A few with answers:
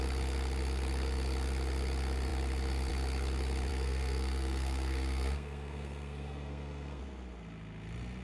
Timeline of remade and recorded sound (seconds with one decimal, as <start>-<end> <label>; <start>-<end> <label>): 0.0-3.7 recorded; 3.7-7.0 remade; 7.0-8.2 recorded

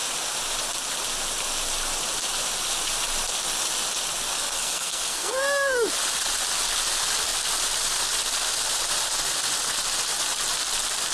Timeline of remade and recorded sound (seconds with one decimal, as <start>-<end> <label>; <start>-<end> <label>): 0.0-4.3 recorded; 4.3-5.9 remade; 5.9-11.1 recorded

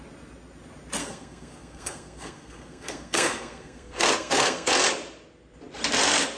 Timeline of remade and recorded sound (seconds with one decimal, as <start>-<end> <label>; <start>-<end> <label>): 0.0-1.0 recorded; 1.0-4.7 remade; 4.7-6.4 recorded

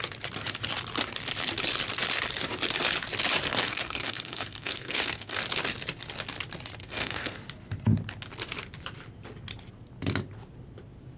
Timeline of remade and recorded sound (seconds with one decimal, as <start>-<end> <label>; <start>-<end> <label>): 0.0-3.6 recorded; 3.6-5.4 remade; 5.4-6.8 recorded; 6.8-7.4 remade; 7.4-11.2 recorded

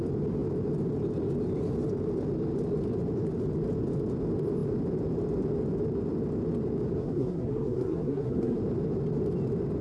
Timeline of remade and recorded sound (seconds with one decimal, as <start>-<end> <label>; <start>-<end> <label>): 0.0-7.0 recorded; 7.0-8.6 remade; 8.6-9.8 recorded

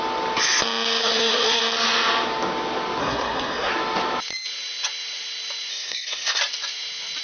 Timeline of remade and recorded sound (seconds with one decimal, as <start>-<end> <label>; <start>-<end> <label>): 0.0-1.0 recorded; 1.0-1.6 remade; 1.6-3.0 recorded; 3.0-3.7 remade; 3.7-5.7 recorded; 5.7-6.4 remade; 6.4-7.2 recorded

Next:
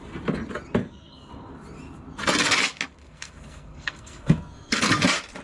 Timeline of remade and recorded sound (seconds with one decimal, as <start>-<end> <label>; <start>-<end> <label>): 0.0-0.8 recorded; 0.8-1.3 remade; 1.3-3.0 recorded; 3.0-4.9 remade; 4.9-5.4 recorded

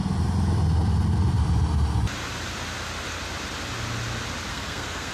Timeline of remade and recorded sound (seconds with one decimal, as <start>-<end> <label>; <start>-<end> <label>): 0.0-4.5 recorded; 4.5-5.1 remade